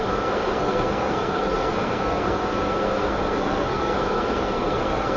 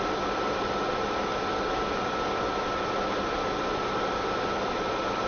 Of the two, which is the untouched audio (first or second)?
second